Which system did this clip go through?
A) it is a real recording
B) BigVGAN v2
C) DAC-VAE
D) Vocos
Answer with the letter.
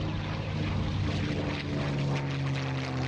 A